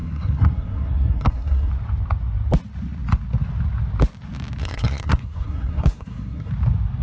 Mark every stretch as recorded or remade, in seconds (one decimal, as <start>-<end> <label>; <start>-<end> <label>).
0.0-1.7 remade; 1.7-4.6 recorded; 4.6-6.5 remade; 6.5-7.0 recorded